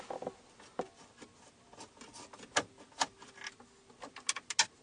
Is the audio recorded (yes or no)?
yes